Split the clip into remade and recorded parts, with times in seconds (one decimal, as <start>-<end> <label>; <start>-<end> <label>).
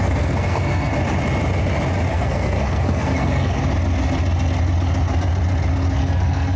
0.0-0.9 remade; 0.9-2.1 recorded; 2.1-3.6 remade; 3.6-6.0 recorded; 6.0-6.6 remade